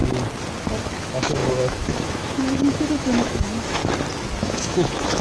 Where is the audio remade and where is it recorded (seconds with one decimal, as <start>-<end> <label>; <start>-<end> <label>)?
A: 0.0-1.0 recorded; 1.0-3.8 remade; 3.8-4.4 recorded; 4.4-5.2 remade